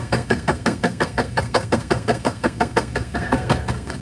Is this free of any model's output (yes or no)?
no